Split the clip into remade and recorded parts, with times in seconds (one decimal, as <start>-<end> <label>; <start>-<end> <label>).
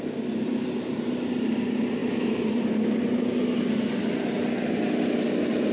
0.0-5.7 recorded